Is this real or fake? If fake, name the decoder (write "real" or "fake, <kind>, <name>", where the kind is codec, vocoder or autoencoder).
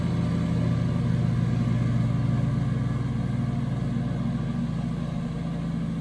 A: real